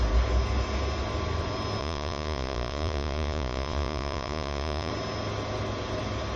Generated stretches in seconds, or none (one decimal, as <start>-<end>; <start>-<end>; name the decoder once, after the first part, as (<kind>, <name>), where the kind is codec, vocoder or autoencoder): 1.8-4.9 (vocoder, Vocos)